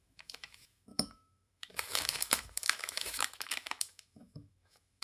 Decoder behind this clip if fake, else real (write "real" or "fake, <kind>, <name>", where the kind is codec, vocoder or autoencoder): fake, autoencoder, DAC-VAE